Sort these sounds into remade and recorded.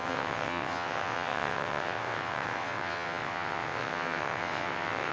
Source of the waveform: remade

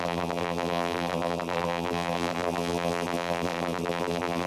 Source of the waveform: remade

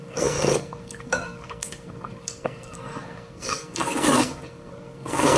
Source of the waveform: remade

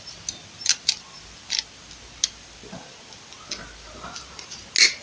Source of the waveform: recorded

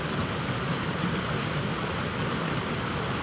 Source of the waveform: recorded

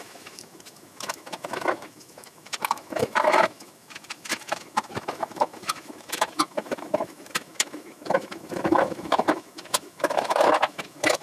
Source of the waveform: remade